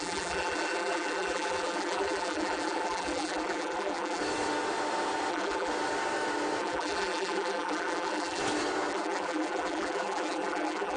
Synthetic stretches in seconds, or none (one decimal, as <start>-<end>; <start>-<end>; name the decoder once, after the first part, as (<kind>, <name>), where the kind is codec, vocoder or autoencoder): 0.0-4.2 (vocoder, BigVGAN v2); 5.3-5.7; 6.6-8.4; 8.9-11.0